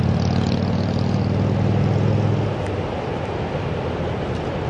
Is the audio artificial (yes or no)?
no